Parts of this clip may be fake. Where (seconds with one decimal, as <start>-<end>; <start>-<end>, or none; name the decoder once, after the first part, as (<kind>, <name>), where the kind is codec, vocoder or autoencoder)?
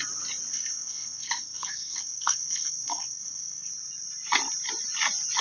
0.5-3.7 (codec, SNAC)